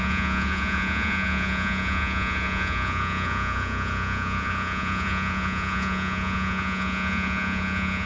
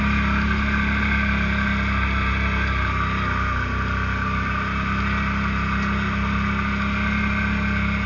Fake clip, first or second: first